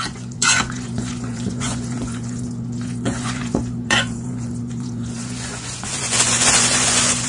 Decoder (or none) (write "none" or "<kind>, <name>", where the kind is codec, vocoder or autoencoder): vocoder, Vocos